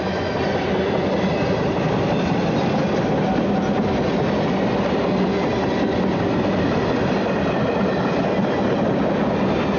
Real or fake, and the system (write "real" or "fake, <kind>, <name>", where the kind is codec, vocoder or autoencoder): real